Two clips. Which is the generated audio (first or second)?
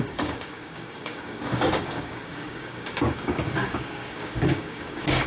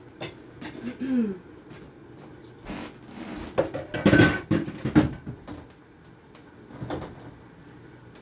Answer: first